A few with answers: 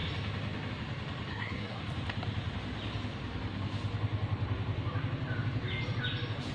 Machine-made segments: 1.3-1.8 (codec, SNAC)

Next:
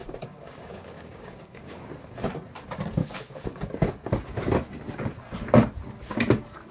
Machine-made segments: 0.0-1.9 (codec, DAC); 3.0-3.7